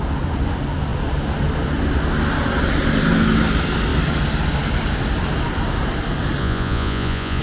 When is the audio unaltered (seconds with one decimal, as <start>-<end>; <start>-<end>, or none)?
0.0-6.4